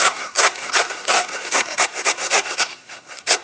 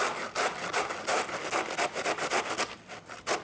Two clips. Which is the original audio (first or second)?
second